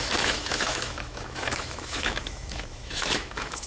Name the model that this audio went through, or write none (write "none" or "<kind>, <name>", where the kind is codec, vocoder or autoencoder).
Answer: autoencoder, DAC-VAE